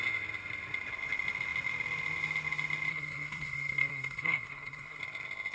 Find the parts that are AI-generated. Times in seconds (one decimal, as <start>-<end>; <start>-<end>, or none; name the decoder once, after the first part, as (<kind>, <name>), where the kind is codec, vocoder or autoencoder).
2.9-5.0 (codec, SNAC)